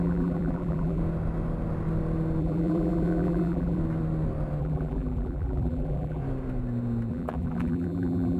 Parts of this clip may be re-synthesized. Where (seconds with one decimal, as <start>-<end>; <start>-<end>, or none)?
0.0-1.0; 2.4-3.8; 4.6-6.2; 7.1-8.4